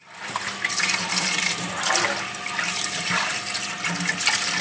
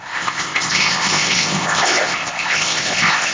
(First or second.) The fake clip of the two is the second